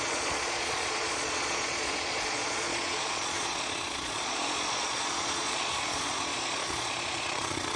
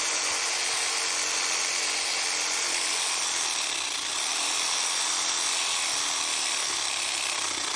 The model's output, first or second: first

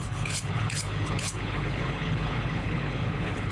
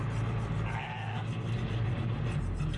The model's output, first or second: first